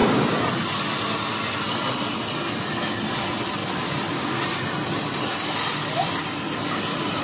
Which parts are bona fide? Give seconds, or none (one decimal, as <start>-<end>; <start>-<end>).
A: 0.5-3.6; 6.2-7.2